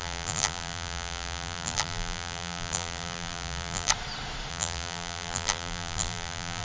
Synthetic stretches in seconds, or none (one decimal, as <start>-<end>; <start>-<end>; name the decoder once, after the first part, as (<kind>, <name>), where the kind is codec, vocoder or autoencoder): 0.0-3.9 (vocoder, BigVGAN v2); 4.5-6.6